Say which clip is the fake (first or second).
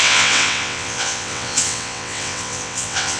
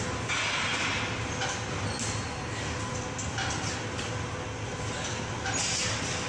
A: first